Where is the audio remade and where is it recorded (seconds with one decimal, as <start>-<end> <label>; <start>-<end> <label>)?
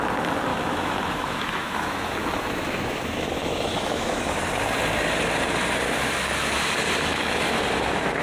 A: 0.0-0.5 recorded; 0.5-4.4 remade; 4.4-7.1 recorded; 7.1-7.6 remade; 7.6-8.2 recorded